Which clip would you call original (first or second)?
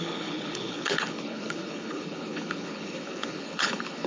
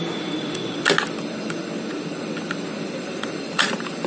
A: second